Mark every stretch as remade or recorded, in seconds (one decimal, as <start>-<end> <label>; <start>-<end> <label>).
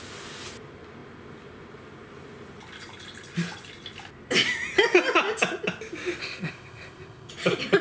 0.0-6.2 recorded; 6.2-7.3 remade; 7.3-7.8 recorded